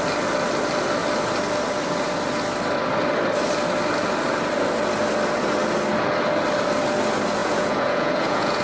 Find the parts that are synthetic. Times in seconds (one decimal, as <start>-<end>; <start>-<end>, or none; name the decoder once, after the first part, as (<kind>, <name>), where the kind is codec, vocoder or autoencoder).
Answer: 7.4-8.6 (vocoder, Vocos)